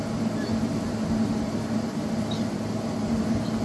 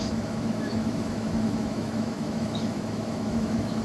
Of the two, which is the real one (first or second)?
first